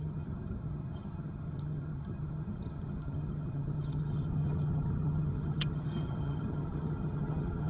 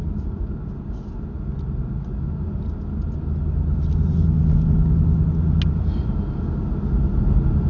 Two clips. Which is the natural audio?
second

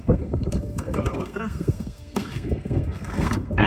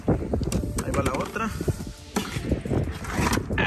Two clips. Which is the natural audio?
second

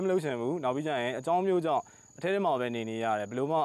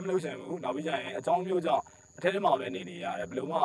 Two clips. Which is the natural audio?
first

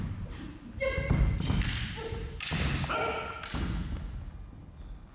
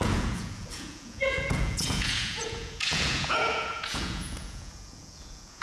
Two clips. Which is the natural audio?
first